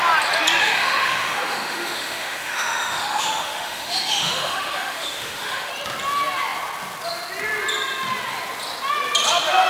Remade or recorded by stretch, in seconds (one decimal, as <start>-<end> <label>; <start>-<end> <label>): 0.0-0.6 recorded; 0.6-5.7 remade; 5.7-9.7 recorded